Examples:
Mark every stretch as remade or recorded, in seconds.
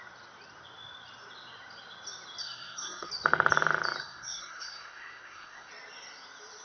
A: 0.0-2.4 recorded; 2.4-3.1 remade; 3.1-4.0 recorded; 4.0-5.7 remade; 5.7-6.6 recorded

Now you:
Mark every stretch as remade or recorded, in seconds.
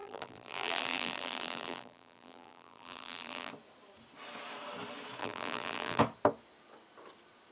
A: 0.0-3.5 remade; 3.5-5.2 recorded; 5.2-6.0 remade; 6.0-7.5 recorded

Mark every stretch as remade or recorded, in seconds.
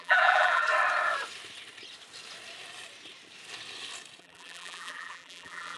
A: 0.0-0.7 remade; 0.7-4.2 recorded; 4.2-5.8 remade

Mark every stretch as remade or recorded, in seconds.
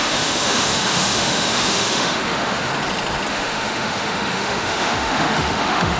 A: 0.0-2.7 remade; 2.7-3.3 recorded; 3.3-6.0 remade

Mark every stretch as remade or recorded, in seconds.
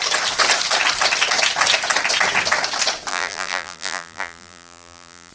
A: 0.0-3.1 recorded; 3.1-5.3 remade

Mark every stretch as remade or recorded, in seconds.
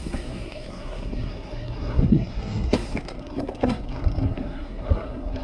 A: 0.0-5.4 remade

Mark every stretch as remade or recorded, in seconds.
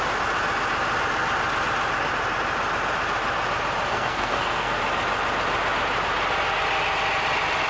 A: 0.0-3.9 recorded; 3.9-4.8 remade; 4.8-7.7 recorded